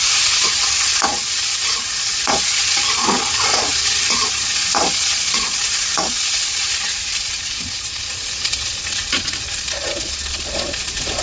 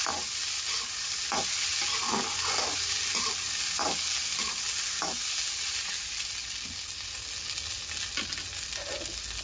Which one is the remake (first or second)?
first